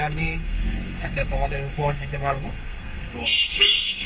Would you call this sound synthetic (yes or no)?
yes